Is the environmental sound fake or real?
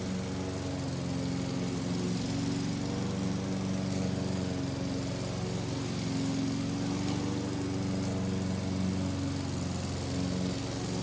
real